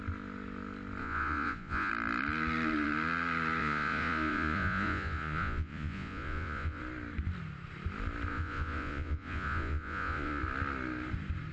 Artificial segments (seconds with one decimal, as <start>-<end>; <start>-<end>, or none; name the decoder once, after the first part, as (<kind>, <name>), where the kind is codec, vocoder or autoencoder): 1.0-1.9 (vocoder, Vocos); 3.6-6.8; 8.3-10.4

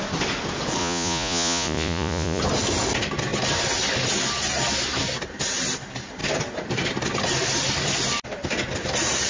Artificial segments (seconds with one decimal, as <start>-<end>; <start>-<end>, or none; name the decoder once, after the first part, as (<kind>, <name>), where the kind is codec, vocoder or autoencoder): 0.8-2.4 (vocoder, Vocos)

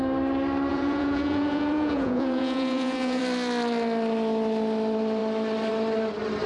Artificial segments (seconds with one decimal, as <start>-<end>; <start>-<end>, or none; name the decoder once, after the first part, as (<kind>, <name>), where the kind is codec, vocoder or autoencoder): 0.7-3.2 (vocoder, Vocos)

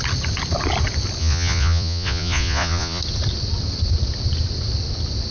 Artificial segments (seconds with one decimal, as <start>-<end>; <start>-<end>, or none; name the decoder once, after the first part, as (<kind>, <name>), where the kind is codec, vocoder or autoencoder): 1.2-3.0 (vocoder, Vocos)

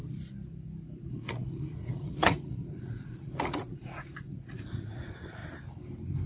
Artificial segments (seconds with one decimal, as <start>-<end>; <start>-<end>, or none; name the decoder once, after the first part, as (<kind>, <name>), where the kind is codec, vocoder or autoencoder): 1.0-5.4 (vocoder, Vocos)

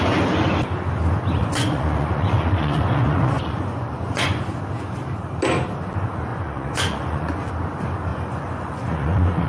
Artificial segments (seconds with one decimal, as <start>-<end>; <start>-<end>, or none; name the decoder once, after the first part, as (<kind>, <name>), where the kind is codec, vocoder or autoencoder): 1.4-4.4 (vocoder, Vocos); 6.3-7.5; 8.1-9.5

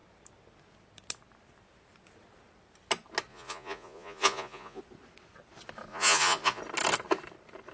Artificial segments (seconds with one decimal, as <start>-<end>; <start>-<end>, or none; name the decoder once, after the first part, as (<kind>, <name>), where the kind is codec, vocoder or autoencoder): 3.3-4.8 (vocoder, Vocos); 5.9-6.6

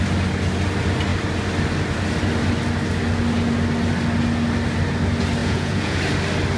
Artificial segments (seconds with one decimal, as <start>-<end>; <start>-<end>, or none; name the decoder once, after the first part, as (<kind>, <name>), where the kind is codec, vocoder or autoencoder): 5.4-6.0 (vocoder, Vocos)